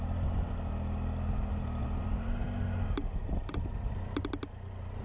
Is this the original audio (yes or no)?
yes